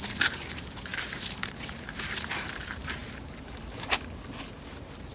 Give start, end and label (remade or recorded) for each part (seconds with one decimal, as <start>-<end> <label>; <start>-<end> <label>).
0.0-3.0 remade; 3.0-4.4 recorded; 4.4-5.1 remade